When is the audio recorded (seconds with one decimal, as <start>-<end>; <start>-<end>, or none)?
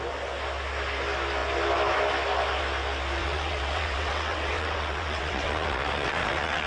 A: 0.0-3.2